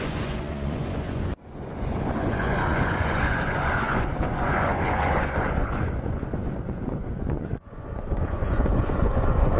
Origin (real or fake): fake